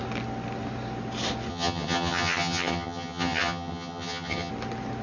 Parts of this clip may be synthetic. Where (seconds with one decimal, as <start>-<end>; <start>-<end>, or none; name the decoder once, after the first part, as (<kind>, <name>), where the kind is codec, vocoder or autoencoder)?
1.5-4.5 (vocoder, HiFi-GAN)